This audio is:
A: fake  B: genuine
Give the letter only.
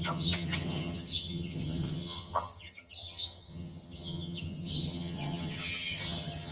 A